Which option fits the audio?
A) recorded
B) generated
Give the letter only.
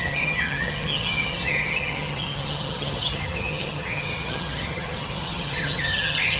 B